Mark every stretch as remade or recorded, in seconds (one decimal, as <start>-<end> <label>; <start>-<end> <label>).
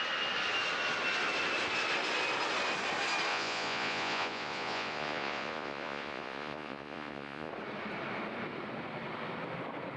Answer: 0.0-3.3 recorded; 3.3-7.5 remade; 7.5-10.0 recorded